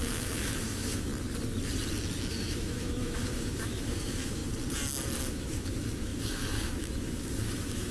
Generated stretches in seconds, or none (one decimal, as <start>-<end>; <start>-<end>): 0.0-1.1; 2.3-4.4; 5.2-7.9